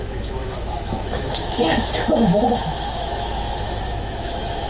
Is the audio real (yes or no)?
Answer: no